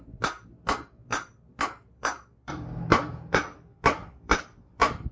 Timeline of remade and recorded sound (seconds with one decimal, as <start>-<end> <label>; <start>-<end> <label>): 0.0-1.5 recorded; 1.5-2.9 remade; 2.9-4.0 recorded; 4.0-5.1 remade